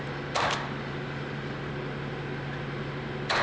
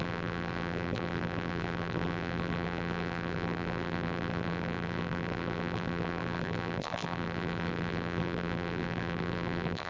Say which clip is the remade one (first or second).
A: second